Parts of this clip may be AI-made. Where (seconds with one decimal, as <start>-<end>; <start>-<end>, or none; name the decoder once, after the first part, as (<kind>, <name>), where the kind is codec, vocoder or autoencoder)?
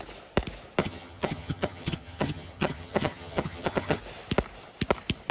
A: 0.8-4.0 (vocoder, HiFi-GAN)